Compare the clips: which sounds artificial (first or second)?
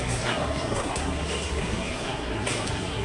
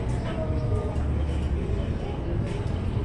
first